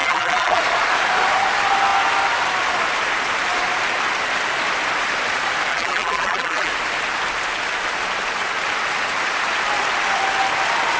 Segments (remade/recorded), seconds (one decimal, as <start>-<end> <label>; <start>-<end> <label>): 0.0-0.6 remade; 0.6-5.7 recorded; 5.7-6.7 remade; 6.7-11.0 recorded